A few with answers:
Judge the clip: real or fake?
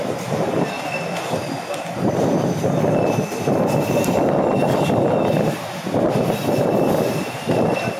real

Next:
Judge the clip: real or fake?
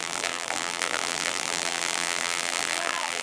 fake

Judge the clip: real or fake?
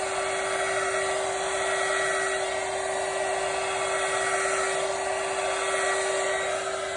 real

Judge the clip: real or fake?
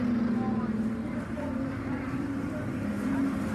real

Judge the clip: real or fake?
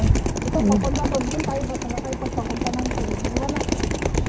real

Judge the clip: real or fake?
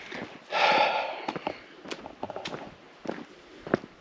real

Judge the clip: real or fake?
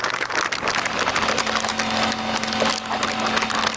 real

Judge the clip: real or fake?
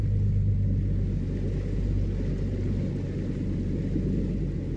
real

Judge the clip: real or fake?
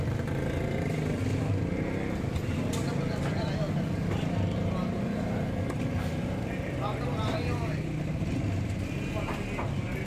real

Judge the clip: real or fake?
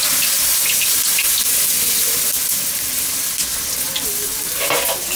real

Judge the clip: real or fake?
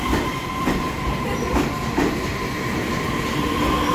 fake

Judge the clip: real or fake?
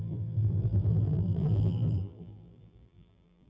fake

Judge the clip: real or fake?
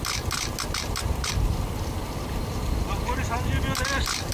real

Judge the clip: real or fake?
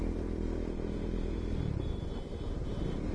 fake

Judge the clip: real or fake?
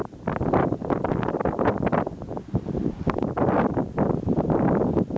fake